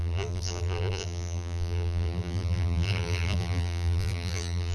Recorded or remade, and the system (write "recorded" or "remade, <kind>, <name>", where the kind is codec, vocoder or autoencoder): remade, vocoder, BigVGAN v2